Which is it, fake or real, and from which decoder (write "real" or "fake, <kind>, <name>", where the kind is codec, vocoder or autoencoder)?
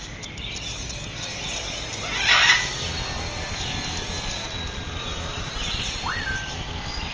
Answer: real